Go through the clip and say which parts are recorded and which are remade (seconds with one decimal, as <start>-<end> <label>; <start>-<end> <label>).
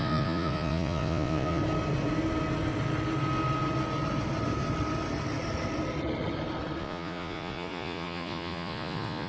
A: 0.0-1.6 remade; 1.6-6.8 recorded; 6.8-9.3 remade